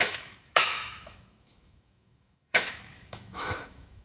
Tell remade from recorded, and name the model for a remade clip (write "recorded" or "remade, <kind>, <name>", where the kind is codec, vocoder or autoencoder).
remade, autoencoder, DAC-VAE